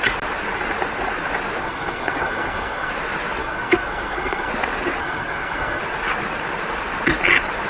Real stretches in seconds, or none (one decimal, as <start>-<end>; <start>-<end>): 0.0-1.6; 2.9-3.4; 4.5-5.0; 5.8-7.7